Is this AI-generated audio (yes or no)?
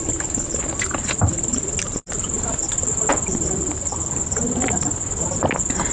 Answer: no